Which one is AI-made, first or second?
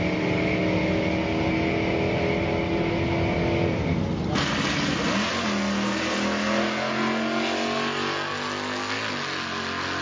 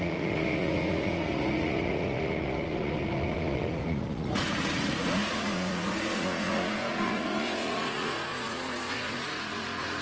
second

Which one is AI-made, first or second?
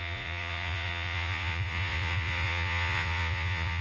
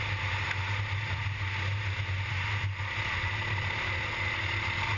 first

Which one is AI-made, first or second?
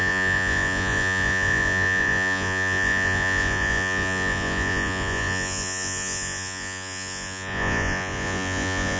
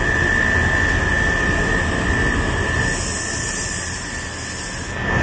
first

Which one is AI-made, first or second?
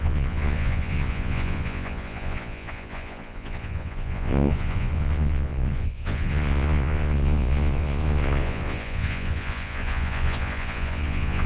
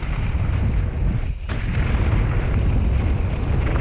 first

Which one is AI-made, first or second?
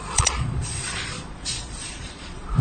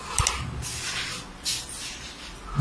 first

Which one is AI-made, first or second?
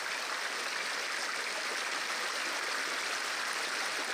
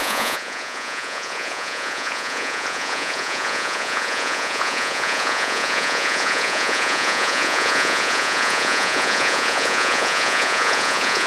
second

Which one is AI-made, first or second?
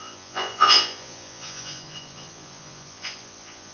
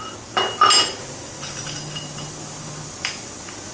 first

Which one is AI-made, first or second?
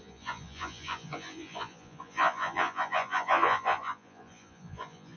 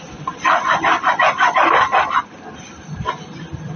first